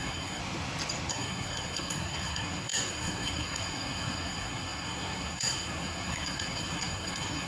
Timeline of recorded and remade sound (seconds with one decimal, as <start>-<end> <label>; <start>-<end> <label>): 0.0-0.4 remade; 0.4-1.1 recorded; 1.1-7.5 remade